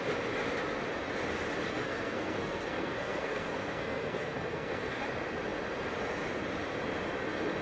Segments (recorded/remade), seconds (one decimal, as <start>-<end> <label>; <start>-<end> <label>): 0.0-1.7 recorded; 1.7-5.0 remade; 5.0-7.6 recorded